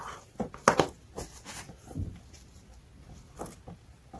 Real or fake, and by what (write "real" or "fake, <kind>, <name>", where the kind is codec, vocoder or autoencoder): real